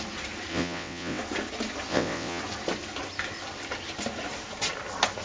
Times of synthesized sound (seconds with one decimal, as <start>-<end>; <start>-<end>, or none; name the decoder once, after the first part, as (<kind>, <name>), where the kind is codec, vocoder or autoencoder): 0.5-1.2 (vocoder, WaveNeXt); 1.9-2.4

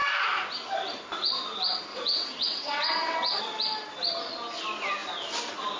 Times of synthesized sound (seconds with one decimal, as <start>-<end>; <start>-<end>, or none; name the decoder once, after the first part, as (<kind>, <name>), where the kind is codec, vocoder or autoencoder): 1.9-3.4 (vocoder, WaveNeXt)

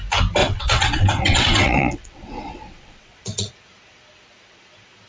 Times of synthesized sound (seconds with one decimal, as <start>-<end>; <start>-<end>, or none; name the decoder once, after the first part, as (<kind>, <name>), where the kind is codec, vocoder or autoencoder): 0.4-3.5 (vocoder, WaveNeXt)

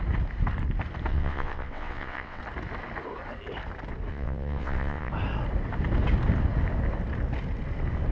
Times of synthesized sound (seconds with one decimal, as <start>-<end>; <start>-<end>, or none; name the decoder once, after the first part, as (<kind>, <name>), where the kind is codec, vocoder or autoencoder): 1.1-2.4 (vocoder, WaveNeXt); 4.1-5.1

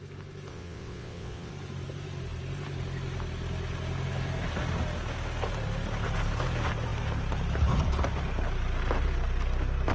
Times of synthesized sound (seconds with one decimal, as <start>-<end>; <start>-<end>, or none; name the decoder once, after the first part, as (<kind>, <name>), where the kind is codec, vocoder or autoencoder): 0.5-1.5 (vocoder, WaveNeXt)

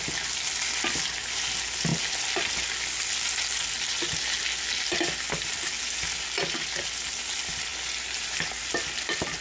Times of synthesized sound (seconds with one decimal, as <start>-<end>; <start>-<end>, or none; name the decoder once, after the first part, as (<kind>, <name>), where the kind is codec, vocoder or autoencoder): none

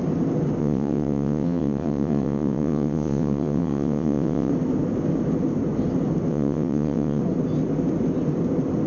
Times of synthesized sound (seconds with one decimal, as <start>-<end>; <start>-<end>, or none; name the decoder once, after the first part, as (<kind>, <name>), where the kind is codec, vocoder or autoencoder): 0.6-4.5 (vocoder, WaveNeXt); 6.3-7.2